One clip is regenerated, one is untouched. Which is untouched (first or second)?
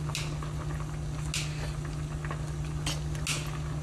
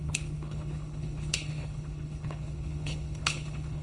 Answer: first